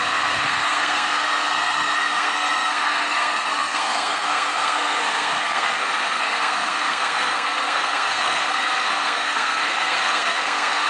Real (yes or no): no